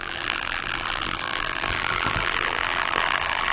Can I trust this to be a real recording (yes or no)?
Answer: no